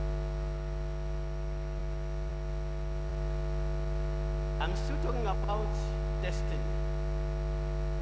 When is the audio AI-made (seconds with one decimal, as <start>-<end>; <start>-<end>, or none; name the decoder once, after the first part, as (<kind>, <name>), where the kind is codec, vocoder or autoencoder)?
none